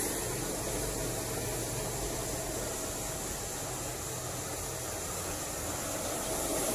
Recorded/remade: recorded